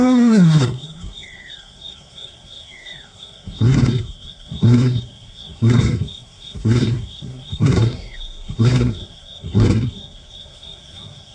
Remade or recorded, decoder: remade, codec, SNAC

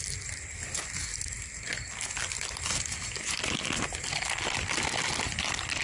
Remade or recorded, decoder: recorded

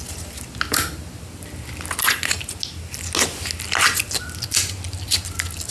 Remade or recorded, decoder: recorded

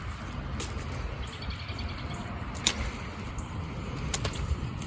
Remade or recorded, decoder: recorded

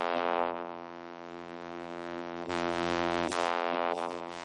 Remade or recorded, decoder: remade, vocoder, BigVGAN v2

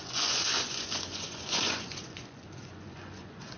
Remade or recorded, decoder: remade, vocoder, Vocos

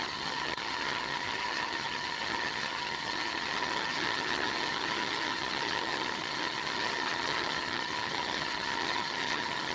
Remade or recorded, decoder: remade, vocoder, HiFi-GAN